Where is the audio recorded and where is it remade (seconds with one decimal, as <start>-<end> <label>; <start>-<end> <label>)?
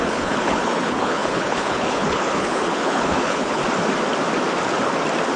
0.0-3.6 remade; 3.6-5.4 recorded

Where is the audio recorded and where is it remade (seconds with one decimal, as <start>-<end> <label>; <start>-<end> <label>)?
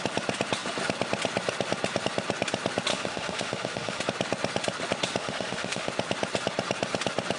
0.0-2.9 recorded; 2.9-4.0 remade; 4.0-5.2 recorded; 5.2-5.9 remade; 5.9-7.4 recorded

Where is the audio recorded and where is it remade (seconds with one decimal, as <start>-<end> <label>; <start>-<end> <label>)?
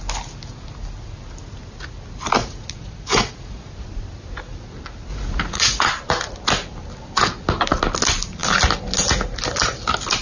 0.0-2.4 recorded; 2.4-3.7 remade; 3.7-5.1 recorded; 5.1-5.8 remade; 5.8-10.2 recorded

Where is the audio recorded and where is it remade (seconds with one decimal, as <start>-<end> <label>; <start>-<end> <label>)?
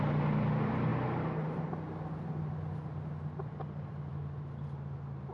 0.0-5.3 recorded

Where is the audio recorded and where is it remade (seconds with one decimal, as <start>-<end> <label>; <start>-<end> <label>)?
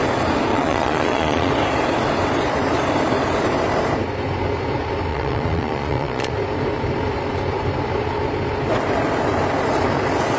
0.0-0.5 recorded; 0.5-1.5 remade; 1.5-5.1 recorded; 5.1-6.3 remade; 6.3-10.4 recorded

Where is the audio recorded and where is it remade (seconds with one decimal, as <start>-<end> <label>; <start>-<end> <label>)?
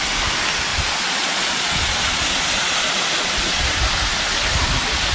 0.0-0.7 recorded; 0.7-3.8 remade; 3.8-5.1 recorded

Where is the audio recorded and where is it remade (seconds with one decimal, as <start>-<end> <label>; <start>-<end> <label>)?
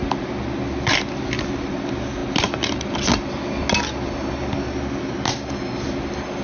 0.0-6.4 recorded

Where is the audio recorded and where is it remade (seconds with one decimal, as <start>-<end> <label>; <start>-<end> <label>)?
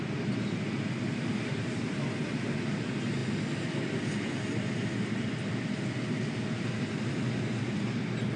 0.0-8.4 recorded